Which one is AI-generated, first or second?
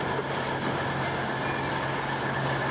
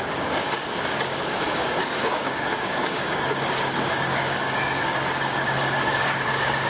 second